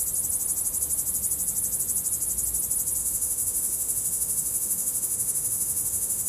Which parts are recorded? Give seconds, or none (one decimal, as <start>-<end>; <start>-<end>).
0.0-3.0